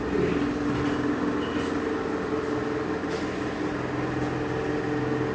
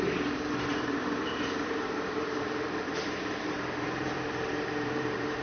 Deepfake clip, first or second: second